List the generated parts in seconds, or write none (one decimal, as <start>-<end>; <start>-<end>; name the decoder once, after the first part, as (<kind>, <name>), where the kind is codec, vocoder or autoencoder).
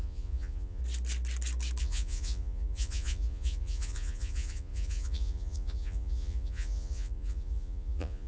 0.0-0.8 (vocoder, Vocos); 1.8-8.3